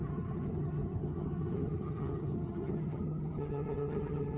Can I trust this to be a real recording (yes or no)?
no